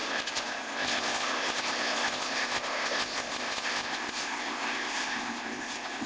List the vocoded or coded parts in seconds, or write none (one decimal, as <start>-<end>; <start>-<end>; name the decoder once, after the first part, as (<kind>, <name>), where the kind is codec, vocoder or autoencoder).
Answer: 0.0-6.1 (codec, ZipCodec)